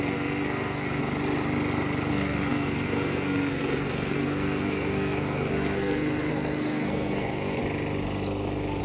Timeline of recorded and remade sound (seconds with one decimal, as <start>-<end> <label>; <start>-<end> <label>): 0.0-1.0 remade; 1.0-2.1 recorded; 2.1-7.6 remade; 7.6-8.8 recorded